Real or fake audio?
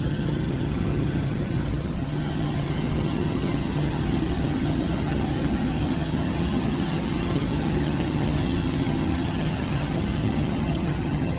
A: fake